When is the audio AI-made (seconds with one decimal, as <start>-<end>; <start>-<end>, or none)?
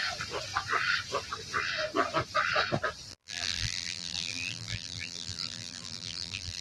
3.1-6.6